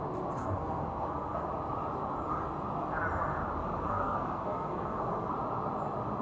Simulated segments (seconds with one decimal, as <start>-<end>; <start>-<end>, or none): 0.4-1.5; 3.6-5.3